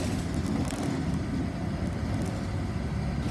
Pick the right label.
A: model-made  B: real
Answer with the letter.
B